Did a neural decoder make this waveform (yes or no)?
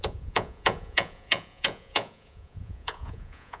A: yes